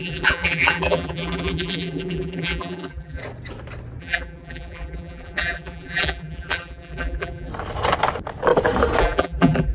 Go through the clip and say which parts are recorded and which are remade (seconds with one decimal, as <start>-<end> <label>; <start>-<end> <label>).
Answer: 0.0-3.2 remade; 3.2-4.0 recorded; 4.0-7.5 remade; 7.5-9.0 recorded; 9.0-9.7 remade